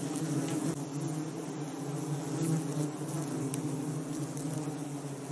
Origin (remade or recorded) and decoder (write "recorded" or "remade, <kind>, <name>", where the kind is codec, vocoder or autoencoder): recorded